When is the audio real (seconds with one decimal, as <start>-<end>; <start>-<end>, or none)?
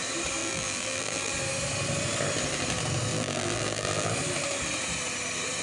0.0-0.4; 1.3-3.1; 4.1-5.6